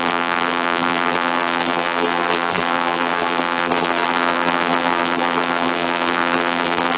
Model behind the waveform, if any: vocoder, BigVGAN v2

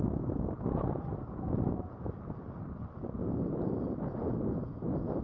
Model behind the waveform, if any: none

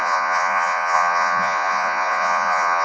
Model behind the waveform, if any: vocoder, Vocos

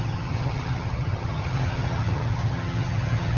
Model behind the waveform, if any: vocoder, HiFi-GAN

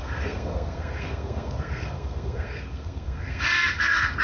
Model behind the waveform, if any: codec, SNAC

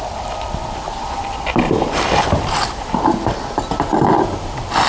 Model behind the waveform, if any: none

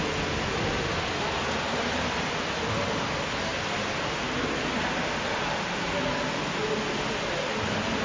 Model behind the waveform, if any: none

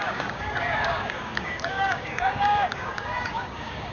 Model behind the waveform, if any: codec, DAC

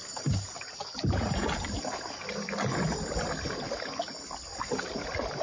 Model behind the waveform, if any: none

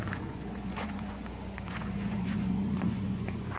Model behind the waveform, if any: vocoder, Vocos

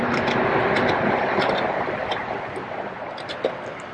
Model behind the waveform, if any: vocoder, BigVGAN v2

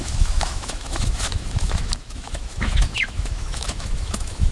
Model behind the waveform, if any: autoencoder, DAC-VAE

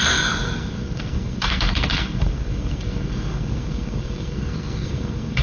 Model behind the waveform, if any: codec, SNAC